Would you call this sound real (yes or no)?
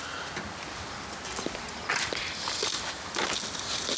yes